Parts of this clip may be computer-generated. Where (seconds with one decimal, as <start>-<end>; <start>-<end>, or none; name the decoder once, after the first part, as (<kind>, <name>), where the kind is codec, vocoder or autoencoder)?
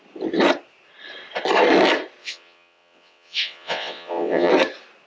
2.2-4.5 (vocoder, WaveNeXt)